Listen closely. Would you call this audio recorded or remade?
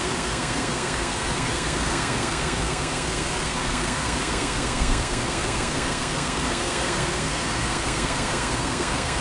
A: remade